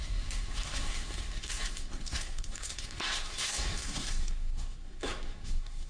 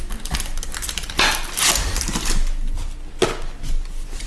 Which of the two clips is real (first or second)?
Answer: second